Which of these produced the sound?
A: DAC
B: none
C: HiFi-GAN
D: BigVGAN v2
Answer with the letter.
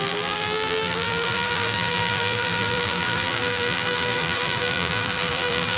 D